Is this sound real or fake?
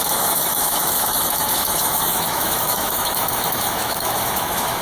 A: fake